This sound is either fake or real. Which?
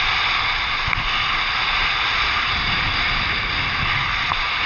real